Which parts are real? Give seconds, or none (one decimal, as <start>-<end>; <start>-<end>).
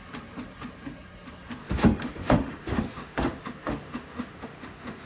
0.0-1.6